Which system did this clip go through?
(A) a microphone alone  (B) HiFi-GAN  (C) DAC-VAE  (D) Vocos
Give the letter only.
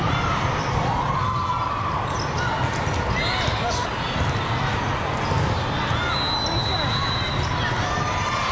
A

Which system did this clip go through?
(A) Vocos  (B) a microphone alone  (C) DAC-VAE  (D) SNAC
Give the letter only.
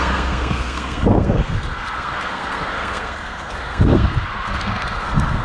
D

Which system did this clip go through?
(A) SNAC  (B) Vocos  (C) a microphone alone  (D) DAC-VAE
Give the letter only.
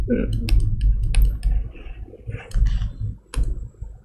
C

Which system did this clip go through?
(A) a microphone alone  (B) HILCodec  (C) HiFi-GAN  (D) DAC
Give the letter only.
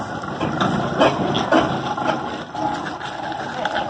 A